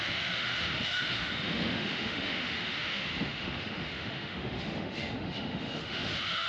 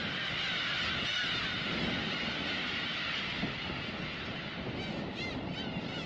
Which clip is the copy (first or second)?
first